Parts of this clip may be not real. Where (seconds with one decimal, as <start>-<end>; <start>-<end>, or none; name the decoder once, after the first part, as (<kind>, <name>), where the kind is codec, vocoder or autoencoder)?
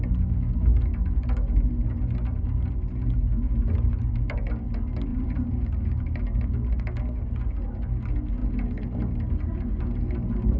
3.9-4.5 (vocoder, BigVGAN v2); 5.1-6.2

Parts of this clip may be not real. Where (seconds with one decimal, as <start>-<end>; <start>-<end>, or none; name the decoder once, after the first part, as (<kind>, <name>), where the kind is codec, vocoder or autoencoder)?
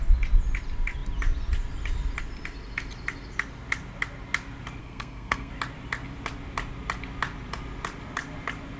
4.8-5.5 (codec, SNAC)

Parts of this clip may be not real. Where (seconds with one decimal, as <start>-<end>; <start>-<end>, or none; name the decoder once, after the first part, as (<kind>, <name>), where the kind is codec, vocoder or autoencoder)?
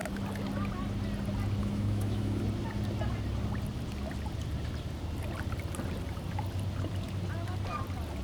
1.6-2.4 (autoencoder, DAC-VAE)